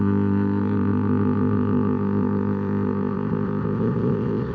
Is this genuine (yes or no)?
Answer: no